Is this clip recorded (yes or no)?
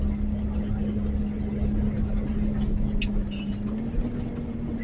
yes